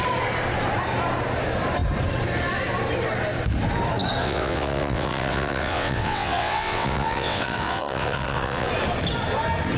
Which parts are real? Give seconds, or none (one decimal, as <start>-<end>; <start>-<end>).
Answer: 0.0-4.2; 8.7-9.8